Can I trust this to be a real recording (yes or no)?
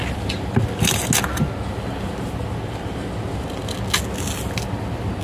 yes